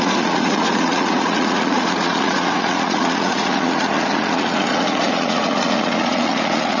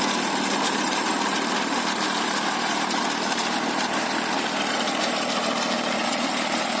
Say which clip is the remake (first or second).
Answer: first